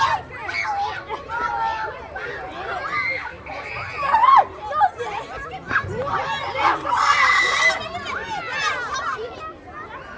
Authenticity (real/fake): real